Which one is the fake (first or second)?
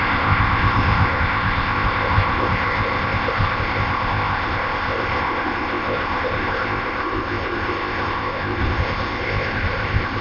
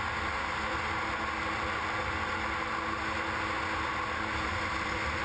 first